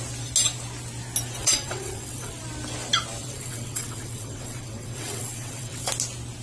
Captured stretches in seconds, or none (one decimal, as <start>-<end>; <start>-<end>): 0.0-1.4; 2.4-3.2; 5.9-6.4